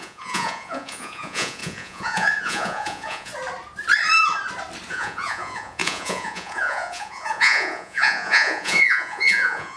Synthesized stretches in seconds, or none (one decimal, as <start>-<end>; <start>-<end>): 0.0-3.3; 4.9-9.8

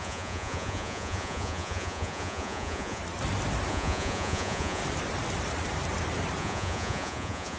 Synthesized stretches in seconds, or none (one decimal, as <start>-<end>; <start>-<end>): 0.0-3.0; 3.7-4.8; 6.4-7.6

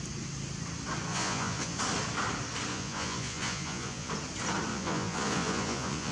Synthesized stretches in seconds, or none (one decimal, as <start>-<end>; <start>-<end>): 1.1-1.8; 2.7-4.1; 4.7-6.1

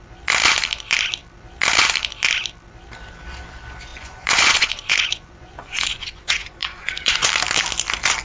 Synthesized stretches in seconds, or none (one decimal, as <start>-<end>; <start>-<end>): 3.9-7.3

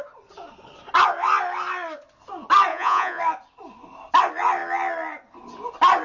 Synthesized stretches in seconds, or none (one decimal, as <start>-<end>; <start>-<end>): 2.7-3.2

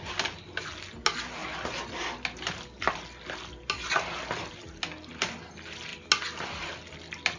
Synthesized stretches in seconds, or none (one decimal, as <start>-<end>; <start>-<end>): none

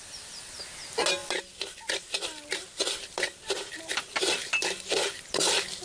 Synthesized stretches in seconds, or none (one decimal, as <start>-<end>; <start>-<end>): none

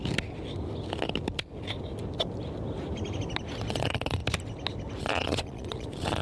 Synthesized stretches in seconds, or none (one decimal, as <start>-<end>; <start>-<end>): 3.7-4.2; 5.0-6.2